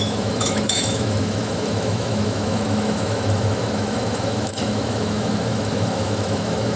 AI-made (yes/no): yes